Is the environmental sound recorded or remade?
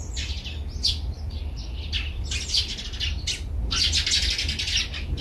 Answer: recorded